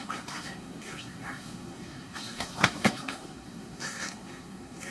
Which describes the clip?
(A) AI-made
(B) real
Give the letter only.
A